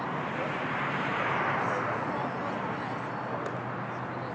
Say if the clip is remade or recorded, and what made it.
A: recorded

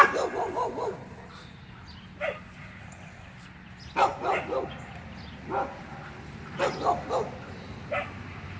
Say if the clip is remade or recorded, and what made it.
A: recorded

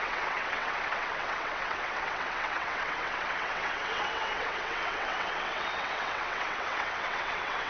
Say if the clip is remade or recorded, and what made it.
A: remade, vocoder, WaveNeXt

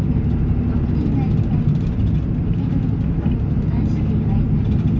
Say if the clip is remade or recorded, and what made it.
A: recorded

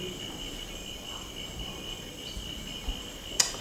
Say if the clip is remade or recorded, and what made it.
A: recorded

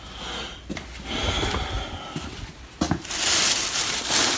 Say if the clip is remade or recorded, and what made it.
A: recorded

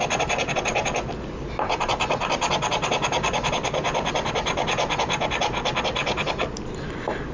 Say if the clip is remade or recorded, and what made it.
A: recorded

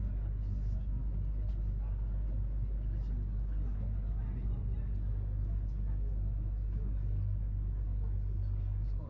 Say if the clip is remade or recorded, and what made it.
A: recorded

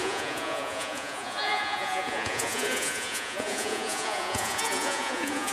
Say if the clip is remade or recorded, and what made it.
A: remade, vocoder, Vocos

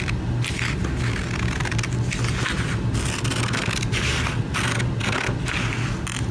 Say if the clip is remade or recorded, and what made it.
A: recorded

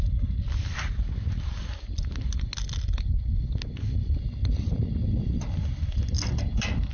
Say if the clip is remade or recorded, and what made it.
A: recorded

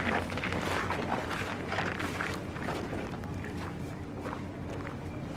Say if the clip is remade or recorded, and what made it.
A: recorded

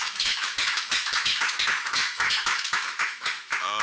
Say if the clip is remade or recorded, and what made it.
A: remade, autoencoder, DAC-VAE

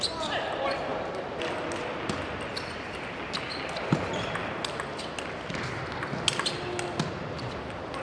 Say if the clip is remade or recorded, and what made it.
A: recorded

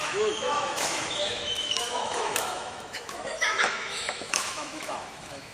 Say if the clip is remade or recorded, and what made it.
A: remade, autoencoder, DAC-VAE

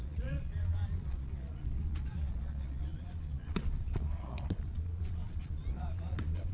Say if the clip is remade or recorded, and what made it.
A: remade, vocoder, Vocos